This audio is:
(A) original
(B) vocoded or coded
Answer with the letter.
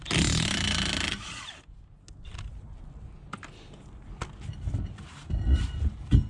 A